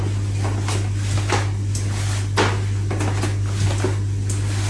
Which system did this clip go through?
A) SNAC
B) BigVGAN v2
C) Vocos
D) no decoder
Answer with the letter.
D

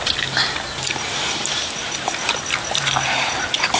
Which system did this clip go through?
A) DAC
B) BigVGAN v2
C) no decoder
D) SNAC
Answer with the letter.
C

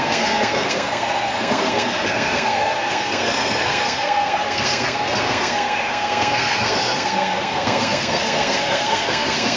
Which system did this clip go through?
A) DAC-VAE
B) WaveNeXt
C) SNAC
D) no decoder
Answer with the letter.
C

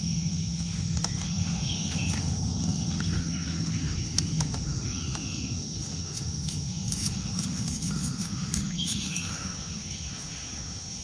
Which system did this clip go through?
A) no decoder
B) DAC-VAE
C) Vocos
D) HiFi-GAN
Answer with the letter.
B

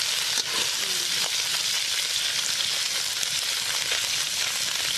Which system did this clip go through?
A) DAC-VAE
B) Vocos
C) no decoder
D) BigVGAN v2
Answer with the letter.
C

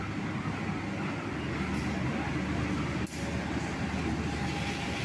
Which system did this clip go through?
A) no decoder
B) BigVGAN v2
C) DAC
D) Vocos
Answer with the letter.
A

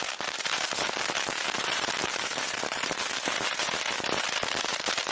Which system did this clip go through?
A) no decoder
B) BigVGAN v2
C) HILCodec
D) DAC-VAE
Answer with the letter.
B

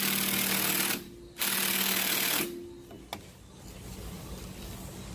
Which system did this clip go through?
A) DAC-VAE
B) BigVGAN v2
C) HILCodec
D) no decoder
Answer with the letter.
D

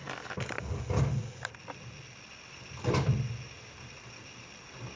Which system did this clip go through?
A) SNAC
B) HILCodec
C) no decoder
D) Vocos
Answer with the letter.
C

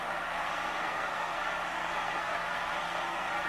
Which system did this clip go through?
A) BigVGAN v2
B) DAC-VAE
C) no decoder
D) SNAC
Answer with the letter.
D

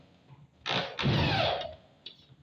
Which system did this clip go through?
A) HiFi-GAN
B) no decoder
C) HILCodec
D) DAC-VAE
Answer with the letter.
B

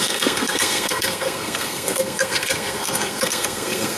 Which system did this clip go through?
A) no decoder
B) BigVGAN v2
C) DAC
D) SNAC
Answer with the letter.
D